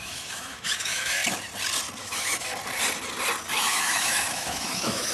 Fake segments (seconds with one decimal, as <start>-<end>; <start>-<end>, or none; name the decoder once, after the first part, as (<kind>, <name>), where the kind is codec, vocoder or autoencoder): 0.0-1.2 (autoencoder, DAC-VAE); 2.0-2.5; 3.5-5.1